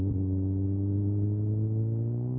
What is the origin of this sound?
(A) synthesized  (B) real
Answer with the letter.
A